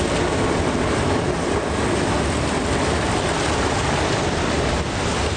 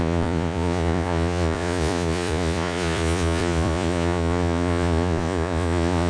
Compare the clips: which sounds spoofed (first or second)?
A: second